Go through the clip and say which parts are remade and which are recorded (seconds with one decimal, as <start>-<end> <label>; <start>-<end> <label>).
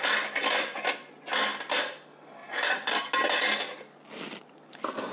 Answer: 0.0-2.4 recorded; 2.4-2.9 remade; 2.9-5.1 recorded